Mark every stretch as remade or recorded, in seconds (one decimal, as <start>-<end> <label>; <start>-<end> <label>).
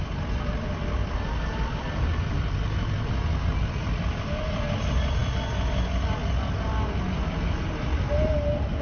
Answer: 0.0-8.8 recorded